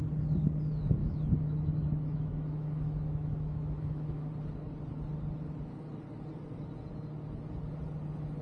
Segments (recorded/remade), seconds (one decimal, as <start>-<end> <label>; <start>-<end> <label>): 0.0-1.0 recorded; 1.0-4.3 remade; 4.3-8.4 recorded